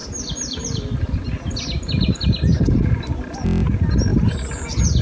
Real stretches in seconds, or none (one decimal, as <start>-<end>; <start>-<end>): 0.0-5.0